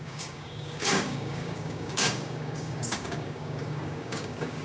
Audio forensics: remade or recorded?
remade